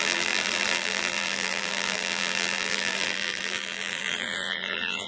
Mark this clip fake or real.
fake